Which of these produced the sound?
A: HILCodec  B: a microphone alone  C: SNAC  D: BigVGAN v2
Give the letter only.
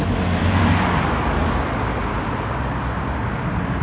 B